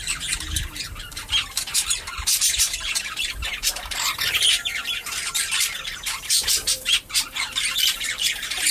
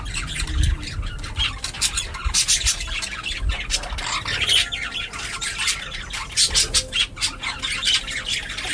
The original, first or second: second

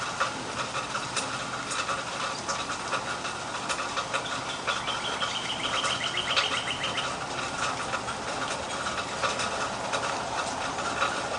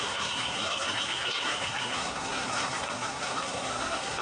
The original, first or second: first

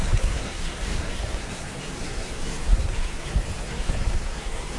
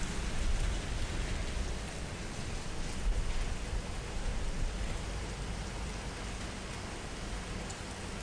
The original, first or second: second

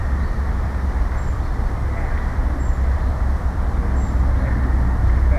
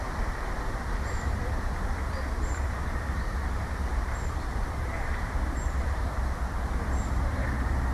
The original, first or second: first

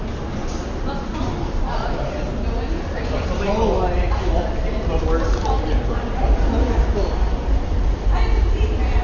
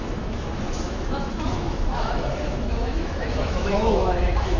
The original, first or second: first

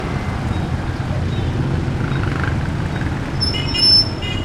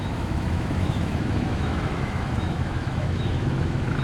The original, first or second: first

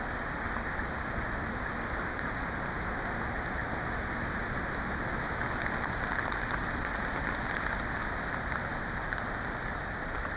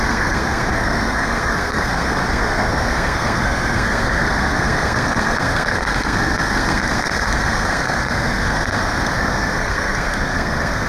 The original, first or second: first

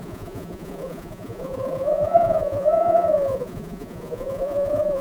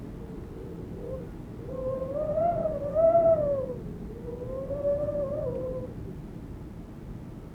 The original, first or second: second